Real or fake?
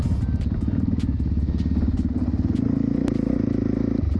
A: real